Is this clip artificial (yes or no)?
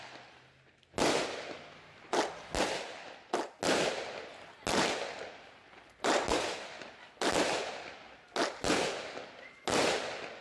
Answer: no